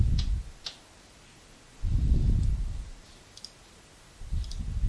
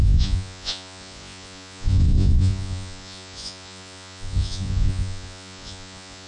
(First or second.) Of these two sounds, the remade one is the second